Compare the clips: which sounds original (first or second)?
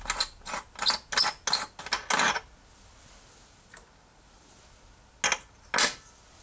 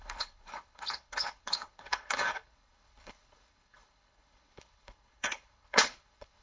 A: first